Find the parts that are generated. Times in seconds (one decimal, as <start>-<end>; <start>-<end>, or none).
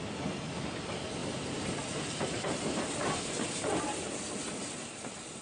1.2-4.4